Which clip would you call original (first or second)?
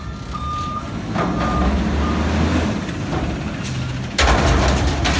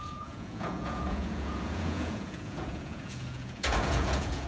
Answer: first